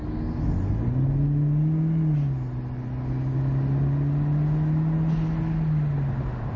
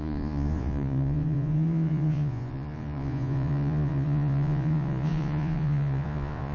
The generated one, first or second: second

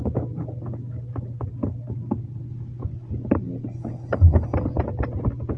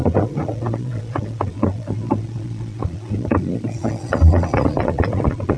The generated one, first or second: second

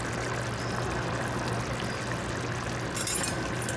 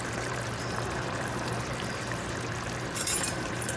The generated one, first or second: second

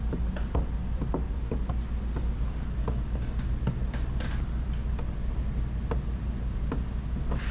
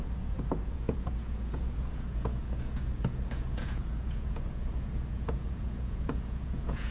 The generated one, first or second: second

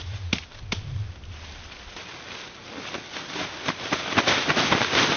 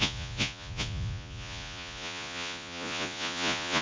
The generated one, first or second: second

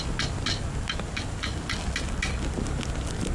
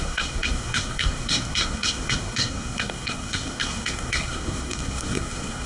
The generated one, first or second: second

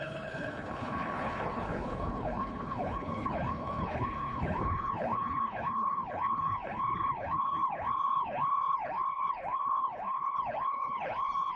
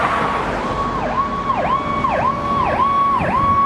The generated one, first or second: first